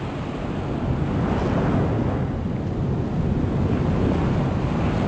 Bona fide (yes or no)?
yes